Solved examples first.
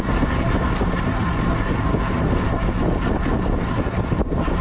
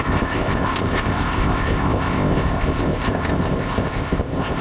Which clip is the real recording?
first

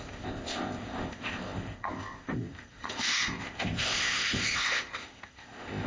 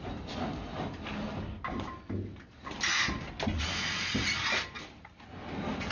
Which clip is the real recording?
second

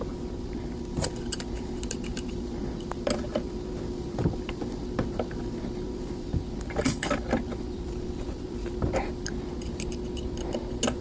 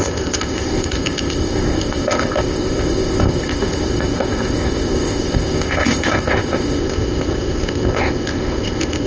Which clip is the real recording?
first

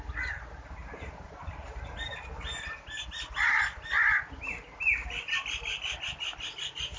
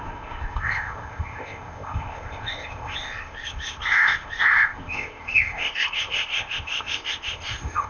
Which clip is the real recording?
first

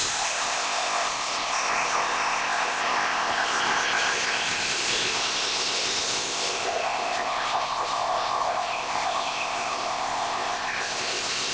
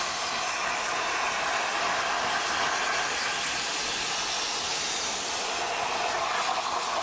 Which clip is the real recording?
second